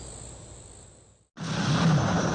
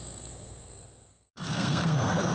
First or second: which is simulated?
second